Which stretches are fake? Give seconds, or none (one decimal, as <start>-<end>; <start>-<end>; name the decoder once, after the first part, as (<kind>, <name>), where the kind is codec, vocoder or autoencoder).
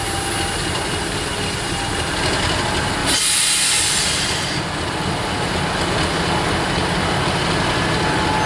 none